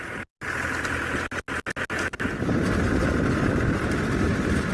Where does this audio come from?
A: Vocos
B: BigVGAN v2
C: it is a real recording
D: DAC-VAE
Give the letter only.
C